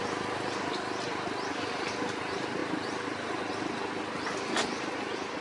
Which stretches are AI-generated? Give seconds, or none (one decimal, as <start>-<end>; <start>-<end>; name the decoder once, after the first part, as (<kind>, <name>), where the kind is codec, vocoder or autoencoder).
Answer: none